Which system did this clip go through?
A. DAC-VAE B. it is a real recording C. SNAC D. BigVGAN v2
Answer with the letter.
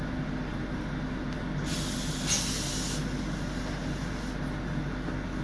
B